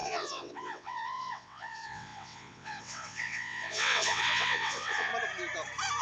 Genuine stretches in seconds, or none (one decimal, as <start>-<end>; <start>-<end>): 5.1-6.0